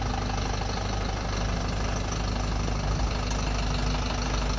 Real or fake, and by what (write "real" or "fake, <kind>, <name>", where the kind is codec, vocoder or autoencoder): real